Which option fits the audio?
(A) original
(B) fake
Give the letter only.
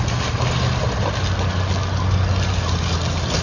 A